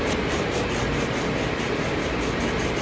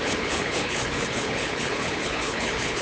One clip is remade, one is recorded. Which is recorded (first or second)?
first